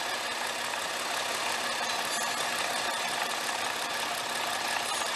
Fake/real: real